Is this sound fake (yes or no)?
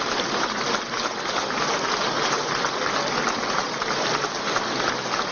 no